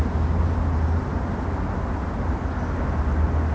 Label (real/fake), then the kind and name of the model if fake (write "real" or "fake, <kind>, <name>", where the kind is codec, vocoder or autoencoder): real